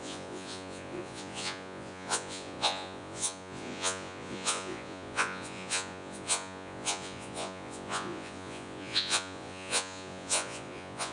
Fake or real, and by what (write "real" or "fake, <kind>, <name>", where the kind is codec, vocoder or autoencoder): fake, vocoder, Vocos